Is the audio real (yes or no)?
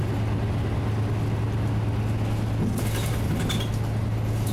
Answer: yes